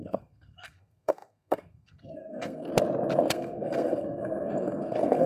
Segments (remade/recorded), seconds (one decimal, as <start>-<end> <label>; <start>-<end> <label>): 0.0-2.7 remade; 2.7-3.3 recorded; 3.3-5.3 remade